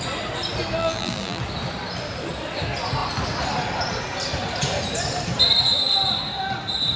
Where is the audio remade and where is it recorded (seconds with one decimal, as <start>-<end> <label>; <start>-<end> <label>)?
0.0-0.8 recorded; 0.8-1.4 remade; 1.4-7.0 recorded